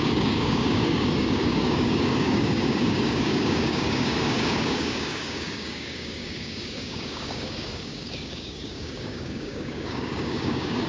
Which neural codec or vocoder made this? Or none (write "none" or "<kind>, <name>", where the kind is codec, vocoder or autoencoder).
codec, DAC